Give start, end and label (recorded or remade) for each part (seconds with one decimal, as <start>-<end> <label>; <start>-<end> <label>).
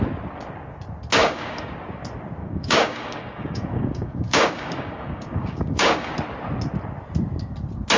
0.0-1.2 recorded; 1.2-1.7 remade; 1.7-2.4 recorded; 2.4-6.1 remade; 6.1-8.0 recorded